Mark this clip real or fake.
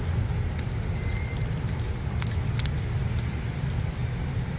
real